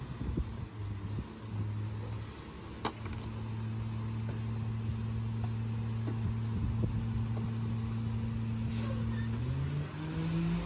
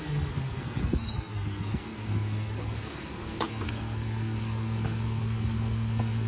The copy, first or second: second